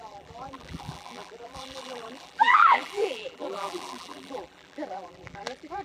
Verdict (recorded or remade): remade